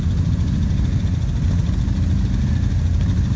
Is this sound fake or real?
real